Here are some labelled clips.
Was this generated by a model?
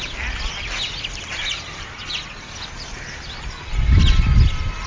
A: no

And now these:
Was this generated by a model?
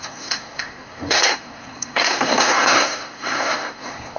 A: yes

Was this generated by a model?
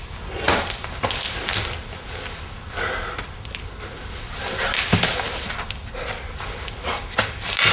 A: no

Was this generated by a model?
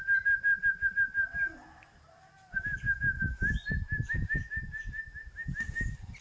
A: no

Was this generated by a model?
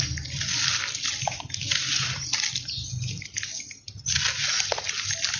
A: no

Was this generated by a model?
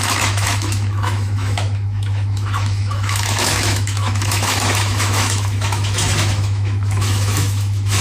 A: yes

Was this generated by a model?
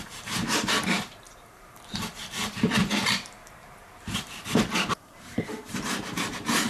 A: yes